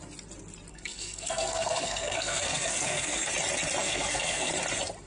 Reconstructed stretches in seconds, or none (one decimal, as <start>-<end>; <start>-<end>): 0.7-3.3; 3.8-4.5